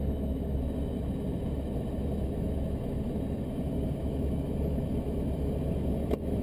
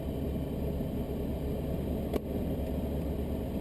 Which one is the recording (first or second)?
second